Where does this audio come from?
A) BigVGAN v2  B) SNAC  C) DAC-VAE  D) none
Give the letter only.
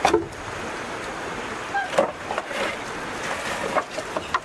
A